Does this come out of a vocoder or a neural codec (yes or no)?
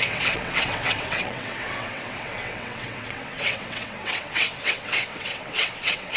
yes